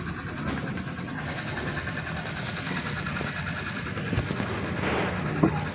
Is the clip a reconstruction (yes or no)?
no